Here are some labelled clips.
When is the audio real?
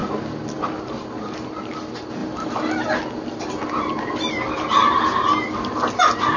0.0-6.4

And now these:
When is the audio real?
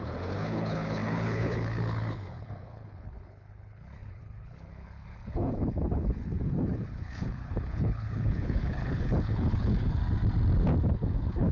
10.0-10.9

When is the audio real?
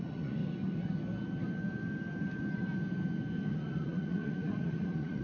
0.4-3.5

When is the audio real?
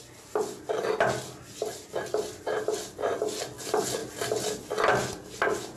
0.0-5.8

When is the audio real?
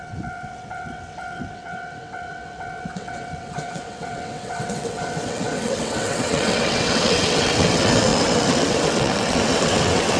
none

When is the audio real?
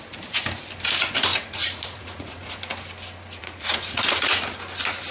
0.0-1.3; 2.7-3.4; 4.4-5.1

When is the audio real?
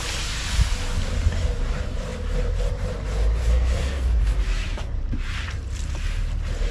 0.0-3.4; 4.2-6.7